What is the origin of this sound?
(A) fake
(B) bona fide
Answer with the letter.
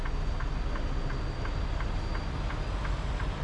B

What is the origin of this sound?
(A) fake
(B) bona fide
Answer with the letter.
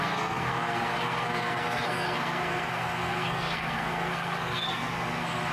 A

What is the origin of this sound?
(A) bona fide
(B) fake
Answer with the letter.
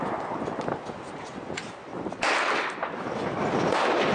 A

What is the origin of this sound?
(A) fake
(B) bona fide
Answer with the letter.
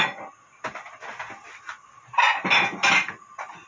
B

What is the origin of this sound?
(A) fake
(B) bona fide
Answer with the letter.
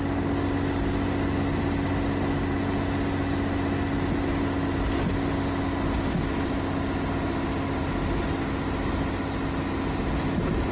B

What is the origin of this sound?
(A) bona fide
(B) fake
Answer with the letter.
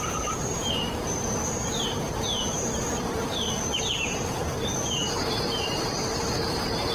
B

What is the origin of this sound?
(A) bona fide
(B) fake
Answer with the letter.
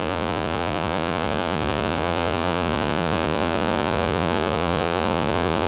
B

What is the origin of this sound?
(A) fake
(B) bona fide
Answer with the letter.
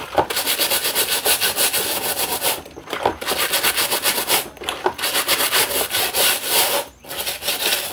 B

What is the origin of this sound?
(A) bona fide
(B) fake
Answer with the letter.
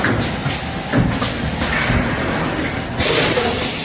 A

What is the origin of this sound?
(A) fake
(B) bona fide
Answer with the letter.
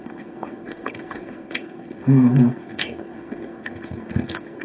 A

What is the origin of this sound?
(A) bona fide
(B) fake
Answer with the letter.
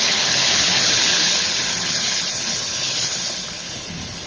B